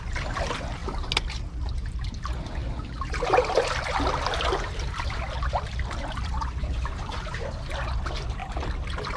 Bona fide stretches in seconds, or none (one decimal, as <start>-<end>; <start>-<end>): 0.0-9.2